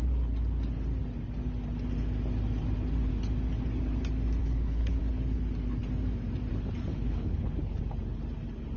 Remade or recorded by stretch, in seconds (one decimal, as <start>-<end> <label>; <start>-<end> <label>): 0.0-4.4 recorded; 4.4-5.0 remade; 5.0-6.9 recorded; 6.9-7.8 remade; 7.8-8.8 recorded